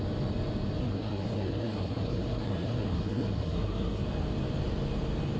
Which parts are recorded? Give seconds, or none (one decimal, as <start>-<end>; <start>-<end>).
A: 0.0-0.8; 4.0-5.4

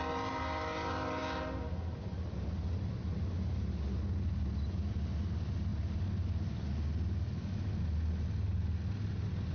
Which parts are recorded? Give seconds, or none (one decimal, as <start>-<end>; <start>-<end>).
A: 0.0-9.5

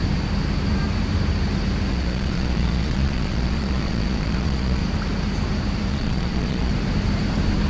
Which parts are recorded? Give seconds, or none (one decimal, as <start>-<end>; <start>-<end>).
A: 0.0-1.9; 4.8-5.9; 6.7-7.7